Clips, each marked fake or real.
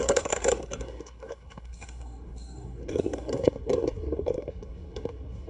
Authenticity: fake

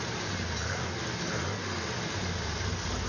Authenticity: real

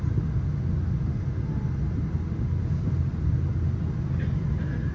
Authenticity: real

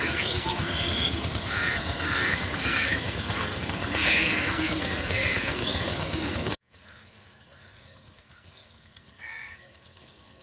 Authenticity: fake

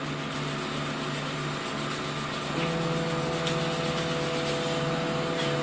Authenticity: real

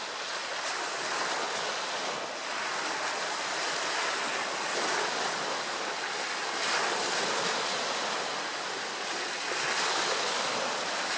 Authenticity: real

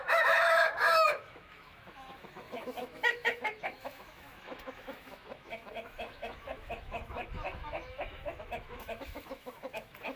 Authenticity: fake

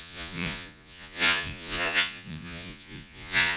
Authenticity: fake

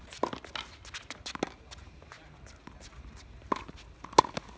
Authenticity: real